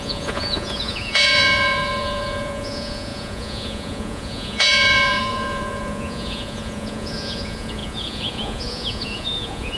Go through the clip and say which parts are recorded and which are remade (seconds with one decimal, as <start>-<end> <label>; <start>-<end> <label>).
0.0-9.8 remade